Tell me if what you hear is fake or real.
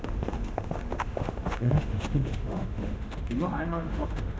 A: fake